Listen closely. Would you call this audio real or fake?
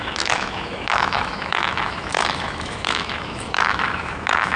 fake